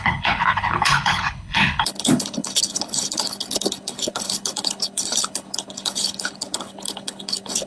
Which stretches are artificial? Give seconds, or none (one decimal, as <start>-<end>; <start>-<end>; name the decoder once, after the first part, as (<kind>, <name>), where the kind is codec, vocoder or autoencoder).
0.0-7.7 (codec, HILCodec)